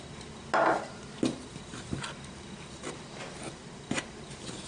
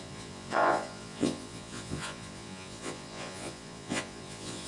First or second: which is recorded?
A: first